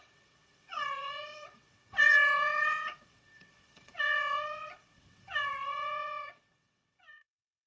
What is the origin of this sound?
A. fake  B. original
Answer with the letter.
A